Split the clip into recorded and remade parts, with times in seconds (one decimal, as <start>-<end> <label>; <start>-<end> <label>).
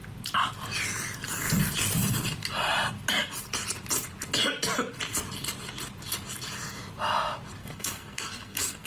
0.0-7.6 recorded; 7.6-8.9 remade